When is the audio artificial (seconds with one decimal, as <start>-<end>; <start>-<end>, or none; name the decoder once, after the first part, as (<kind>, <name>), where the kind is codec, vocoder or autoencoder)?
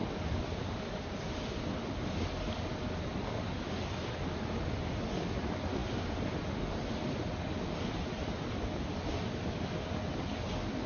none